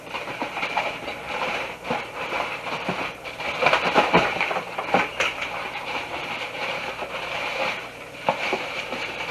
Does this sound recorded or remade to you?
remade